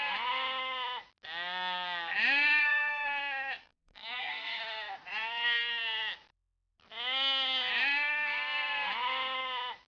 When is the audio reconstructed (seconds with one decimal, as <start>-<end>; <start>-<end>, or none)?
2.6-3.2; 3.6-4.6

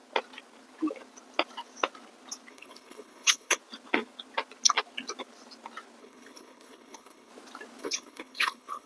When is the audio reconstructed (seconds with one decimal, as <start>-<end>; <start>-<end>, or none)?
2.5-3.6; 6.0-7.3; 7.8-8.9

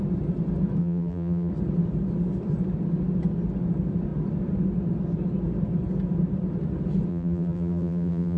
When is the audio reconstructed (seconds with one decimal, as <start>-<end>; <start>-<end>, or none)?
0.8-1.5; 7.1-8.4

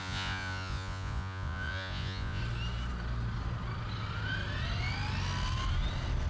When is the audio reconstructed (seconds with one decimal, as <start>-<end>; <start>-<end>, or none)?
0.0-2.4

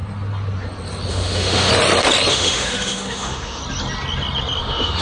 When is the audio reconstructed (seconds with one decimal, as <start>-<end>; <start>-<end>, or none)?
1.1-1.7; 2.3-3.6; 4.6-5.0

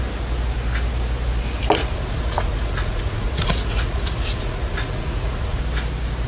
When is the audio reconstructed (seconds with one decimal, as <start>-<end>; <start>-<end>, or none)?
1.8-5.6

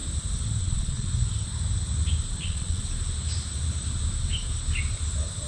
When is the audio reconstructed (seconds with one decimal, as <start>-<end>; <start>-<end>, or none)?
0.6-1.1; 2.4-2.8

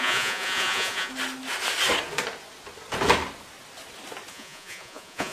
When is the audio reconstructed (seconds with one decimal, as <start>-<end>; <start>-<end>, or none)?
0.0-1.1; 4.3-5.3